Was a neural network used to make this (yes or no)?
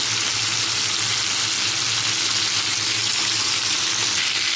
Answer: no